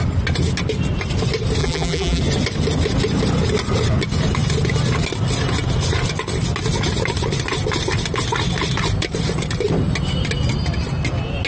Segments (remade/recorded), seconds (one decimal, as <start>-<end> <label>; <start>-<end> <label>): 0.0-1.6 recorded; 1.6-2.2 remade; 2.2-11.5 recorded